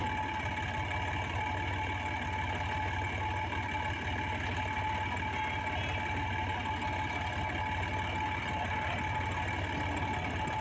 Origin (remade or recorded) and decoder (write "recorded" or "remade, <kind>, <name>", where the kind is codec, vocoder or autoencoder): recorded